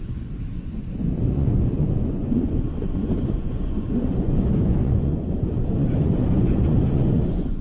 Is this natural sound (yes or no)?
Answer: no